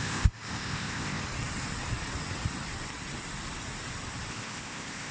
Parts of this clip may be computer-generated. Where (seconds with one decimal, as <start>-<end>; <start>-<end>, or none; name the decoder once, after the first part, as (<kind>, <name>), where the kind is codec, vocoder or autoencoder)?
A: 0.0-1.2 (codec, ZipCodec); 4.3-5.1